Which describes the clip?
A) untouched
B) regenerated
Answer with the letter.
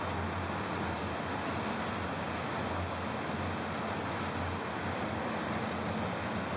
A